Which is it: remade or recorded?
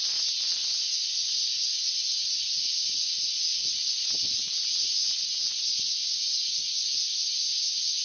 recorded